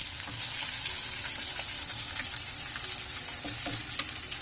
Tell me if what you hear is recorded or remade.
recorded